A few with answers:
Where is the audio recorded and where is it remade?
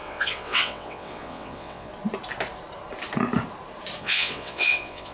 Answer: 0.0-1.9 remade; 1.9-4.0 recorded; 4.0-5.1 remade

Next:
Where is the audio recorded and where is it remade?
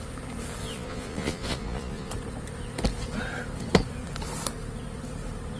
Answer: 0.0-0.6 recorded; 0.6-2.1 remade; 2.1-5.6 recorded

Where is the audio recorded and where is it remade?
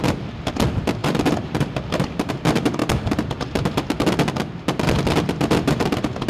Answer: 0.0-1.0 recorded; 1.0-2.3 remade; 2.3-6.3 recorded